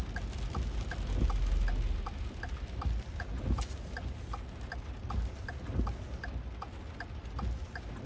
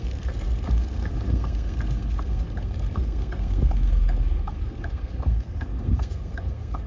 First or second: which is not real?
second